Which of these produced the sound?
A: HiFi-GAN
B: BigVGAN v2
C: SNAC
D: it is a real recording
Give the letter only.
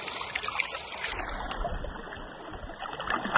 D